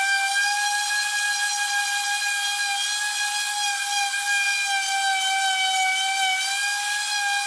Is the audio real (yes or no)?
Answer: yes